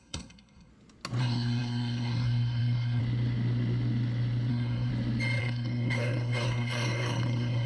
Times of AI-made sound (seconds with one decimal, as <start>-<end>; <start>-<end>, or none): 0.0-0.7; 1.2-3.0; 4.5-4.9; 5.4-7.7